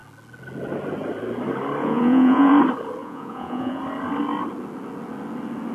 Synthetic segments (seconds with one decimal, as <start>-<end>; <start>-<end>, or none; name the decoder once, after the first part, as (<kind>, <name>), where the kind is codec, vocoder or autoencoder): 1.8-2.5 (vocoder, Vocos); 3.0-3.8